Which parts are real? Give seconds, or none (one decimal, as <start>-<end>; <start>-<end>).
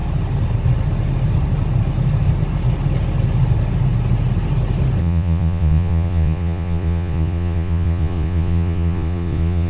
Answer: 0.0-5.0